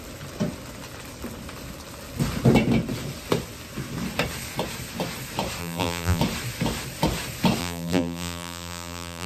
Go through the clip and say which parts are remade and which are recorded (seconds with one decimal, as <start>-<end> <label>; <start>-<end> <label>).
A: 0.0-5.6 recorded; 5.6-6.2 remade; 6.2-7.6 recorded; 7.6-9.3 remade